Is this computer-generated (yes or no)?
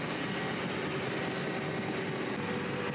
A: no